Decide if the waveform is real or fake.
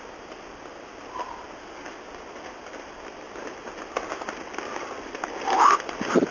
real